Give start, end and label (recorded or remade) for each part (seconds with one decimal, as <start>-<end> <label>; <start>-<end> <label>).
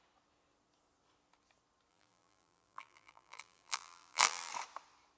0.0-1.9 recorded; 1.9-4.5 remade; 4.5-5.2 recorded